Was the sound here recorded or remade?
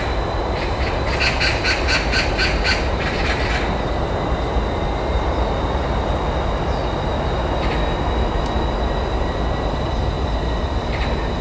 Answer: recorded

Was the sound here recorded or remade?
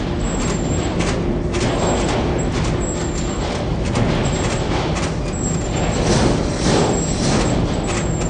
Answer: recorded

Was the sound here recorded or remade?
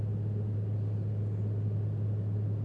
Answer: recorded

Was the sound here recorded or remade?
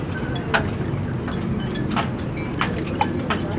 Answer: recorded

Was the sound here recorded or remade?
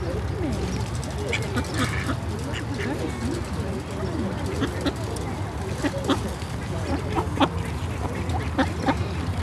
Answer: recorded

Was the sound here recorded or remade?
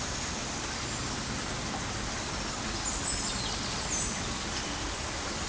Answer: recorded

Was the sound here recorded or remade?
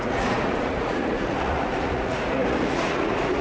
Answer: remade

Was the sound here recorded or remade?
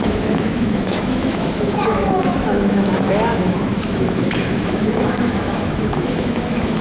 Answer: remade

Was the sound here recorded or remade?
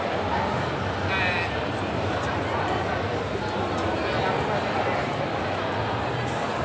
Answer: recorded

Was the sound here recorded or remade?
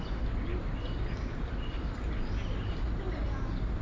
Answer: recorded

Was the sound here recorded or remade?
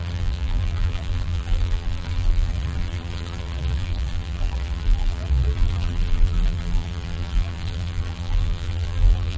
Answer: remade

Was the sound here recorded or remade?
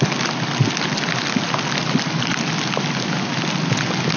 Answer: recorded